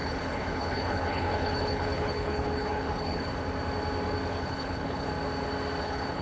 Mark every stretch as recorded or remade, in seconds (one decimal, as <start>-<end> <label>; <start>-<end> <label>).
0.0-3.3 remade; 3.3-4.4 recorded; 4.4-5.1 remade; 5.1-5.8 recorded; 5.8-6.2 remade